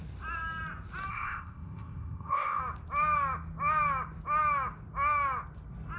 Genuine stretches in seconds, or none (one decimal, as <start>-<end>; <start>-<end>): 0.0-1.1; 2.6-6.0